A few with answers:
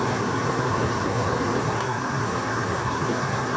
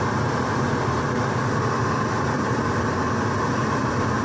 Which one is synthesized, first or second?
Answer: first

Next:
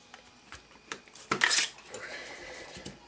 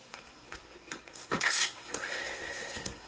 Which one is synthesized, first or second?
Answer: second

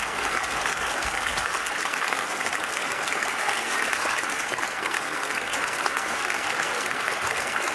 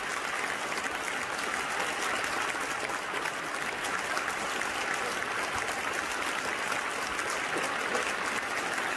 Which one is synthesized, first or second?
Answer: first